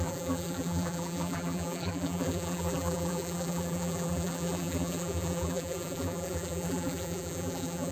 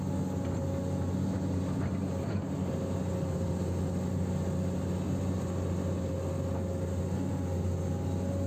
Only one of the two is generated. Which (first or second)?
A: first